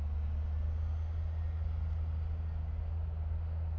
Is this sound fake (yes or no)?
no